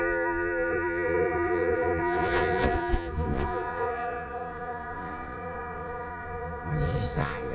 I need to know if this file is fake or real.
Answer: fake